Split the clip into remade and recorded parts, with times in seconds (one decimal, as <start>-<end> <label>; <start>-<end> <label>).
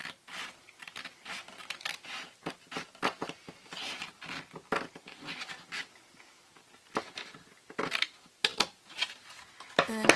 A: 0.0-10.2 recorded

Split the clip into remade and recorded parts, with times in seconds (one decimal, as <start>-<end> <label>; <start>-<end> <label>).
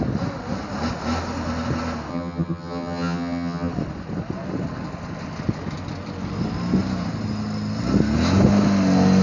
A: 0.0-2.1 recorded; 2.1-3.7 remade; 3.7-9.2 recorded